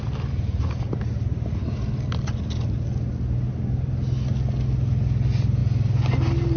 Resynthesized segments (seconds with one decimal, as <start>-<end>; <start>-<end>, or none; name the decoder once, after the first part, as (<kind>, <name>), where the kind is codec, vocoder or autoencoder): none